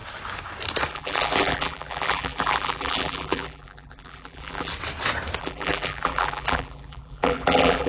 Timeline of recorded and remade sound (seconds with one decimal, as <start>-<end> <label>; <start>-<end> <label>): 0.0-0.9 recorded; 0.9-4.7 remade; 4.7-5.4 recorded; 5.4-7.9 remade